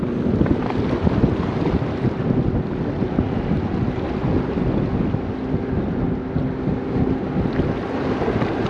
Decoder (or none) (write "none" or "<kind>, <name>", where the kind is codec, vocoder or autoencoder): none